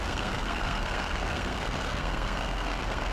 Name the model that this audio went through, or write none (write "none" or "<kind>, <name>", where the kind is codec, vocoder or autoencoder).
codec, SNAC